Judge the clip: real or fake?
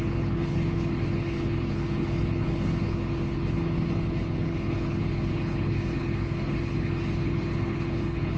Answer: fake